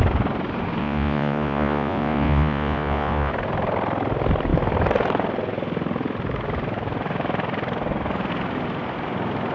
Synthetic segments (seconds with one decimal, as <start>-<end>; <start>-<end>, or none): 0.8-3.3

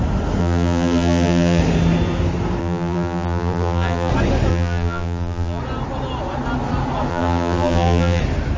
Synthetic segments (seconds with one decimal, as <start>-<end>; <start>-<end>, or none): 0.4-1.6; 2.6-4.1; 4.5-5.6; 7.1-8.2

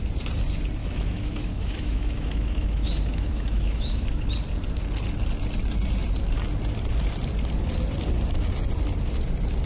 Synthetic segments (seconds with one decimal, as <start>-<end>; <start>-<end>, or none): 0.8-4.3

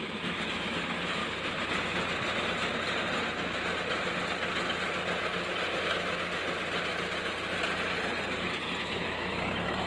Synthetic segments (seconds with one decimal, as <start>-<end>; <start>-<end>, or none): 0.0-1.2; 5.8-6.4; 8.8-9.9

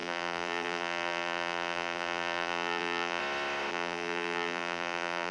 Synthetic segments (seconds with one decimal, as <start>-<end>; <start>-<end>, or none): 0.0-3.2; 3.7-5.3

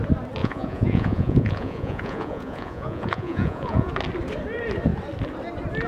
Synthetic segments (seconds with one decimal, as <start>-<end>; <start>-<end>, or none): 0.4-3.9

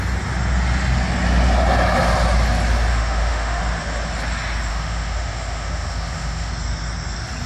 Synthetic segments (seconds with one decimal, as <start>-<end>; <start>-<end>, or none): 2.9-3.6; 4.7-6.5